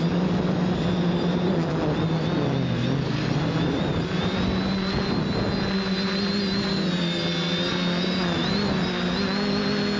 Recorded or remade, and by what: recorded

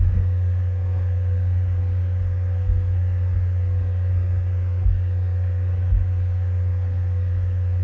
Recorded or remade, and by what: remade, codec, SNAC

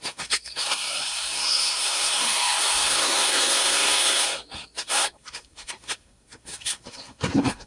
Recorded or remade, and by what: remade, codec, SNAC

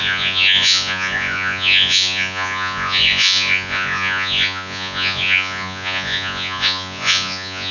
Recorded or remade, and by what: remade, vocoder, Vocos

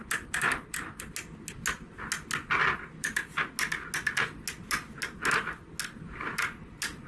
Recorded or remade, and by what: recorded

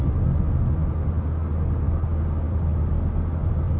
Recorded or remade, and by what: recorded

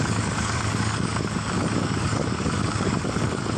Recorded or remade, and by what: remade, codec, DAC